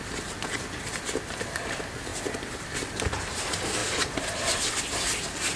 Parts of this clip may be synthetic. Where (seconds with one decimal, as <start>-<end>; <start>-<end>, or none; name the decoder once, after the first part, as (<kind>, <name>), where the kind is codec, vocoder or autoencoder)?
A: none